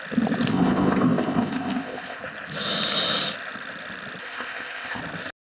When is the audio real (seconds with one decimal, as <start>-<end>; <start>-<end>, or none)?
0.0-0.5; 2.2-4.2; 5.0-5.5